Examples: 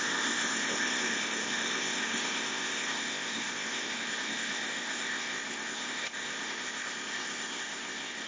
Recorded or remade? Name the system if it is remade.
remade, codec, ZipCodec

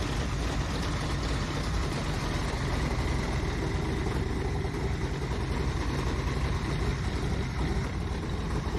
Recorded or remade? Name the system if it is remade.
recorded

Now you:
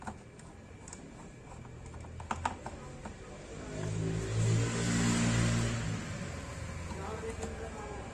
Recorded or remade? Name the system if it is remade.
recorded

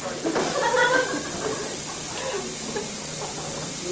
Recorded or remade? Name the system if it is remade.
recorded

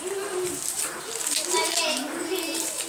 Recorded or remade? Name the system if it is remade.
recorded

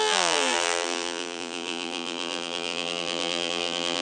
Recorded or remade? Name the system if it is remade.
remade, vocoder, BigVGAN v2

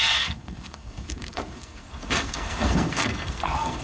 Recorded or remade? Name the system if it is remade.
remade, codec, SNAC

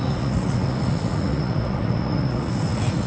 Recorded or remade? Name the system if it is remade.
remade, vocoder, Vocos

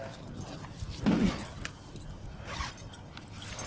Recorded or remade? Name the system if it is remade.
recorded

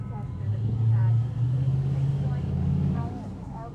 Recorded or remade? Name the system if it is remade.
remade, codec, DAC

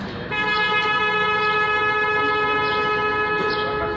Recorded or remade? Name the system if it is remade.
recorded